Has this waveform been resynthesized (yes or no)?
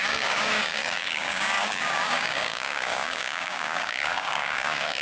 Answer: yes